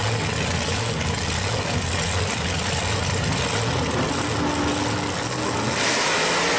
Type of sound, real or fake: real